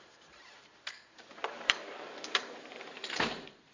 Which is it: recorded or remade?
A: remade